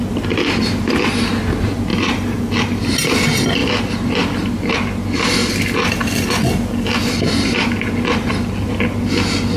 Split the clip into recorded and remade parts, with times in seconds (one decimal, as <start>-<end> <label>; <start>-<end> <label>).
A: 0.0-1.9 recorded; 1.9-2.9 remade; 2.9-9.6 recorded